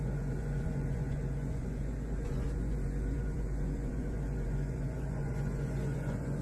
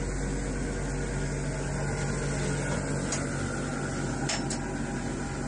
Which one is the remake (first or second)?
first